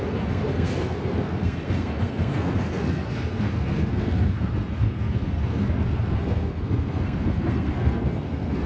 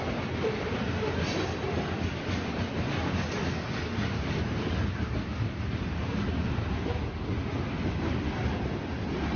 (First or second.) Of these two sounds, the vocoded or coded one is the first